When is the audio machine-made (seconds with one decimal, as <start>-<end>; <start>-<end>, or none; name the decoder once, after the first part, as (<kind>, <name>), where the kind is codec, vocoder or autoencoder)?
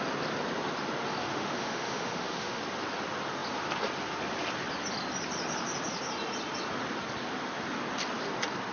1.2-2.6 (autoencoder, DAC-VAE)